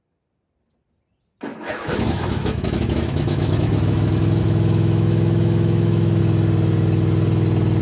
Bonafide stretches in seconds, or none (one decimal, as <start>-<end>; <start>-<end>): 0.0-1.5; 6.2-7.8